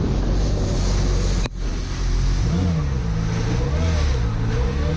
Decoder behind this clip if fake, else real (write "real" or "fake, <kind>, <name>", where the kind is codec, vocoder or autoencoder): real